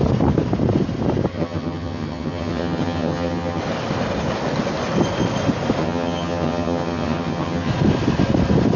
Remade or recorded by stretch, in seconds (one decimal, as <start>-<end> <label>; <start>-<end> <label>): 0.0-1.3 recorded; 1.3-3.6 remade; 3.6-5.8 recorded; 5.8-7.7 remade; 7.7-8.8 recorded